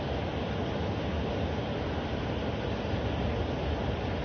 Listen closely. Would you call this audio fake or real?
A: real